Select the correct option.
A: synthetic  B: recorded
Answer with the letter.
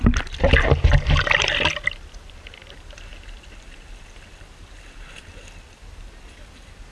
B